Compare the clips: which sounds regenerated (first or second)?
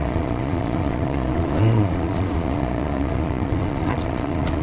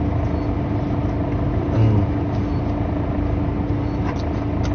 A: first